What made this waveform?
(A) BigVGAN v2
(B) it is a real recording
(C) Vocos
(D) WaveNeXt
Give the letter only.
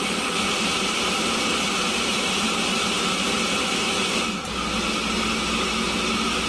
B